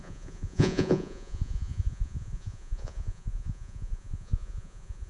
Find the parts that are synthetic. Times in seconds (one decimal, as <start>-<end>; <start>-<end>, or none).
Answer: 0.0-5.1